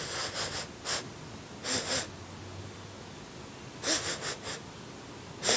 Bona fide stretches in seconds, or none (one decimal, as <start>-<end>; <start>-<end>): 0.0-5.6